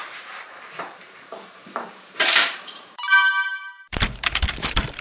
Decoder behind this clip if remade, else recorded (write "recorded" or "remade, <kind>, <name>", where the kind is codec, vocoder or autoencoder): remade, vocoder, BigVGAN v2